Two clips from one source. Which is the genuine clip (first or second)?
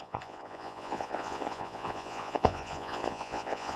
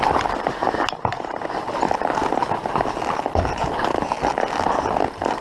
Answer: second